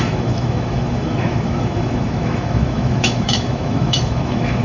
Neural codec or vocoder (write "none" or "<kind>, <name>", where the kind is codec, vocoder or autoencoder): autoencoder, DAC-VAE